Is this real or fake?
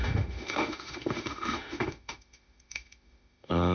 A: fake